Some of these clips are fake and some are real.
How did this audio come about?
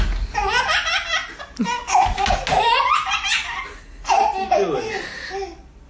real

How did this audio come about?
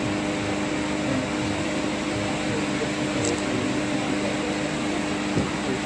real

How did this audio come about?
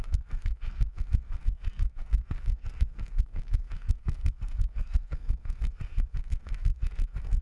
fake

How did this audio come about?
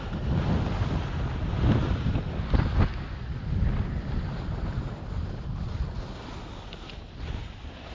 real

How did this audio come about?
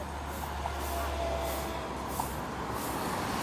real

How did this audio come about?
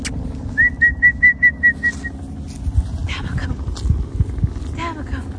real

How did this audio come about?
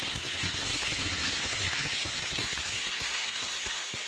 fake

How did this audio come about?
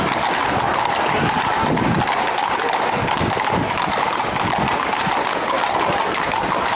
real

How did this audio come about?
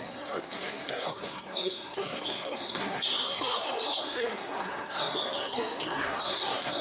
fake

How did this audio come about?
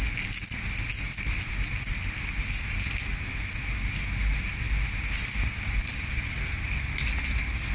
real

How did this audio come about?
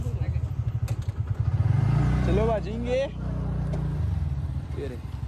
real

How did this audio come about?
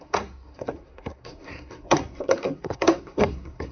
fake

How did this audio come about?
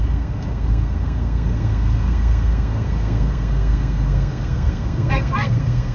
fake